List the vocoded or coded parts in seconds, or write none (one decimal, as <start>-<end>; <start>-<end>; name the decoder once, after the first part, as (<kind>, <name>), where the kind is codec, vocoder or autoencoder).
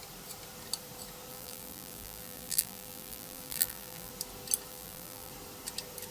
1.3-4.1 (vocoder, BigVGAN v2); 4.7-5.3